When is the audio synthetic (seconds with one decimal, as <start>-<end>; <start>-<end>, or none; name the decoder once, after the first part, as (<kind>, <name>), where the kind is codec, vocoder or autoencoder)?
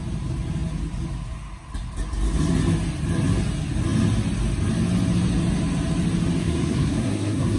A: 6.4-7.6 (codec, SNAC)